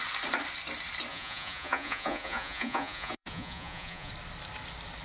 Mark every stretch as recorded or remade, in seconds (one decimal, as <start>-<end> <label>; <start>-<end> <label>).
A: 0.0-1.1 recorded; 1.1-4.1 remade; 4.1-5.0 recorded